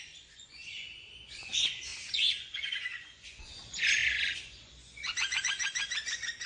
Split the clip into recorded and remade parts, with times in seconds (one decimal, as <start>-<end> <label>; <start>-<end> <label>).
0.0-6.5 remade